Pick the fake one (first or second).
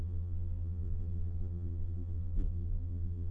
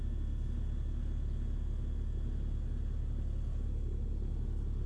first